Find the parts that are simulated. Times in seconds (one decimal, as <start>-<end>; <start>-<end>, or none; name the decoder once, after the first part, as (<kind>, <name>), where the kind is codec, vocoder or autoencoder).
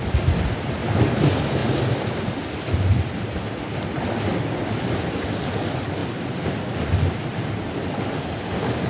none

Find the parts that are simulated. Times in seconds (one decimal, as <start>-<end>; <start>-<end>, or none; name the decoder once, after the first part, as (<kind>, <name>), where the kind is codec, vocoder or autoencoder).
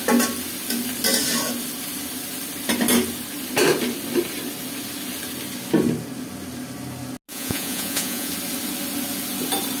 7.3-8.3 (vocoder, Vocos)